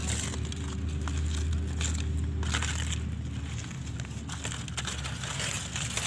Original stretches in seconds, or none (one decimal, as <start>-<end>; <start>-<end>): 0.0-6.1